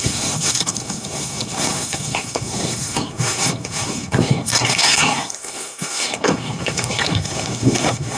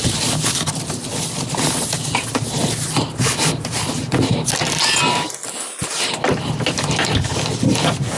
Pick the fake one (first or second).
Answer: first